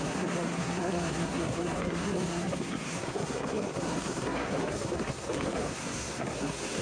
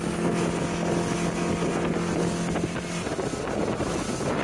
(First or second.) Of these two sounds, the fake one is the first